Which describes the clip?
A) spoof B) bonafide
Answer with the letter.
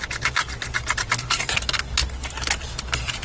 B